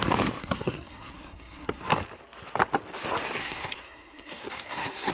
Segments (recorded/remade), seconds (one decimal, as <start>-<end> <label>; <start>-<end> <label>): 0.0-0.4 recorded; 0.4-1.8 remade; 1.8-3.4 recorded; 3.4-5.1 remade